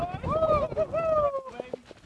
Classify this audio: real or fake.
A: real